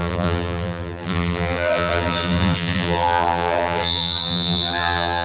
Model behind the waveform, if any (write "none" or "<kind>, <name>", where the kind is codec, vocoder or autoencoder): vocoder, BigVGAN v2